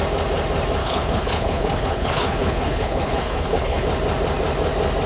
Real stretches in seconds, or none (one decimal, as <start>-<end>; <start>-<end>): 0.0-0.8; 3.8-5.1